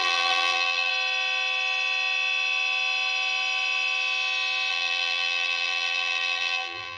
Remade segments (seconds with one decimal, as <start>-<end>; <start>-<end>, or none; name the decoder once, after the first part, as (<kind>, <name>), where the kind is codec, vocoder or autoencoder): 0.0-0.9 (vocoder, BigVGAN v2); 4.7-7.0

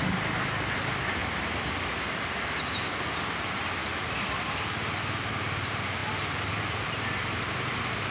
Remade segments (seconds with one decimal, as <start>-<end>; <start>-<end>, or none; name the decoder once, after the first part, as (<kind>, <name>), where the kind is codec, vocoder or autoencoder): 1.2-1.9 (vocoder, BigVGAN v2); 3.8-4.4

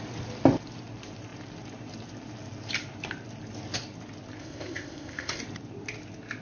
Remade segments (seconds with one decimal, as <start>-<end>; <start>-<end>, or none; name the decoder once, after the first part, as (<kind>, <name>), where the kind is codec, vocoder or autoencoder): 4.4-5.4 (codec, ZipCodec)

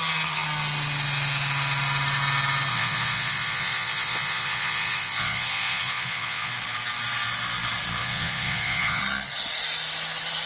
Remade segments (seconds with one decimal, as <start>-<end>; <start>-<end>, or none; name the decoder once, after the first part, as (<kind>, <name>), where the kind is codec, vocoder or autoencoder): 2.7-6.5 (vocoder, Vocos); 8.0-9.0

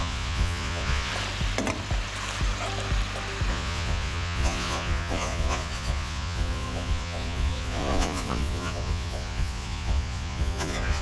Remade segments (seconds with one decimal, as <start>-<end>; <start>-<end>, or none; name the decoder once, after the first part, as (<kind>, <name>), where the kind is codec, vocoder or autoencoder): 0.0-1.1 (vocoder, Vocos); 3.5-11.0

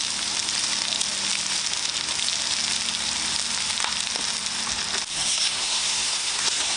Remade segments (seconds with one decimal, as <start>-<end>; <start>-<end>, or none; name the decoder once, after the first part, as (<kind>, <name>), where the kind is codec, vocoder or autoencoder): 5.1-6.8 (codec, SNAC)

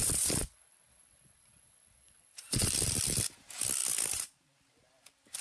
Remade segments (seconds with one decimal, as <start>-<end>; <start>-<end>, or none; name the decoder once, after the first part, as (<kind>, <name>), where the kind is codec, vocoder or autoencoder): 0.0-2.7 (vocoder, Vocos)